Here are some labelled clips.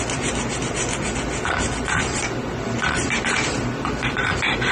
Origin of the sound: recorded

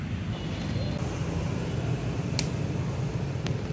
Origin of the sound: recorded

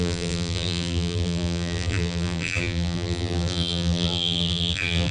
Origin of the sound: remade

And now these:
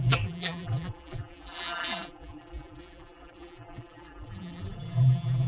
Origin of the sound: remade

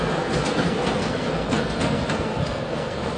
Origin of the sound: remade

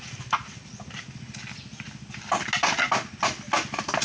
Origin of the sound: recorded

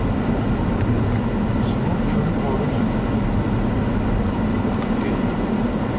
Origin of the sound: recorded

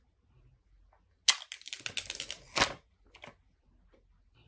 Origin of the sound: recorded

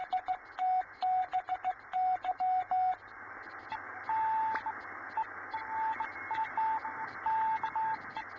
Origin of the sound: recorded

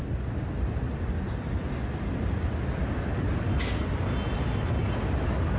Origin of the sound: recorded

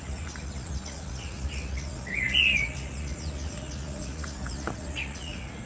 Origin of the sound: remade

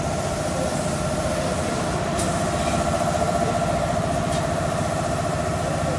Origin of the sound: remade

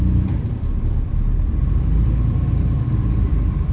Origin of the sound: remade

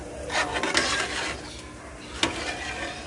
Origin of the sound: recorded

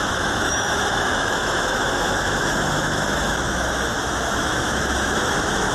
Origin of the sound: remade